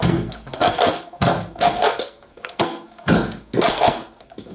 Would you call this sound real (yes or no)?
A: no